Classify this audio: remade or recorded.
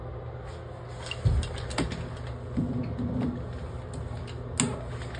recorded